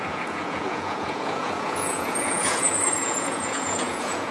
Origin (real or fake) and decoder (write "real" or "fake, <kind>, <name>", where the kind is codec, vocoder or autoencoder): fake, vocoder, Vocos